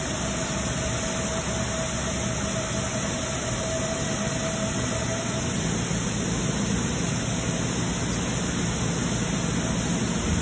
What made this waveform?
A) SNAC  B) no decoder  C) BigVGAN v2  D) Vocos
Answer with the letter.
B